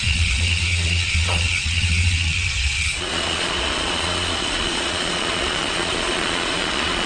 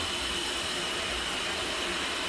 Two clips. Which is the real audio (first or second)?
second